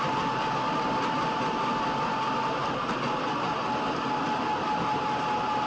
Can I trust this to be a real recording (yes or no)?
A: yes